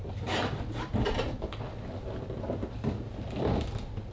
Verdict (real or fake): real